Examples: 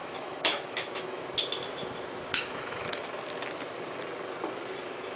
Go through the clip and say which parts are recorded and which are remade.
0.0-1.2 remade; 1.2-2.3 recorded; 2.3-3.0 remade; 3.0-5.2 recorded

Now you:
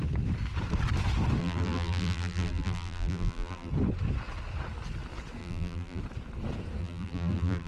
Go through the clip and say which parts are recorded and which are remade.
0.0-1.4 recorded; 1.4-3.7 remade; 3.7-5.4 recorded; 5.4-6.0 remade; 6.0-6.8 recorded; 6.8-7.7 remade

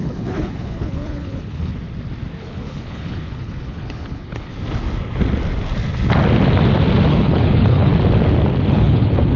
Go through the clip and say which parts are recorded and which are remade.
0.0-1.7 remade; 1.7-2.4 recorded; 2.4-4.5 remade; 4.5-7.1 recorded; 7.1-7.9 remade; 7.9-8.7 recorded; 8.7-9.4 remade

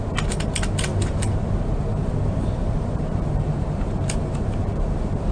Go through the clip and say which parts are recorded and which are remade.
0.0-0.9 recorded; 0.9-1.5 remade; 1.5-1.9 recorded; 1.9-5.3 remade

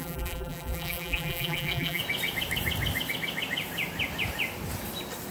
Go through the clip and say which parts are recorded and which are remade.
0.0-2.0 remade; 2.0-5.3 recorded

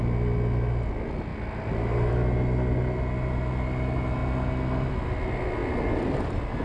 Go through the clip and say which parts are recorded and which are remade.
0.0-6.6 recorded

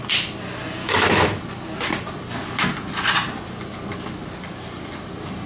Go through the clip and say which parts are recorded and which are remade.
0.0-0.8 recorded; 0.8-1.4 remade; 1.4-5.5 recorded

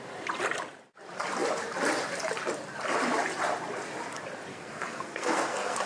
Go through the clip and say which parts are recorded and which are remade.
0.0-4.5 recorded; 4.5-5.9 remade